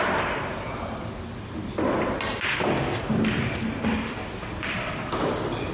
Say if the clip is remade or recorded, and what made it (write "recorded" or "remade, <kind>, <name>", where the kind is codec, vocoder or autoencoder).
recorded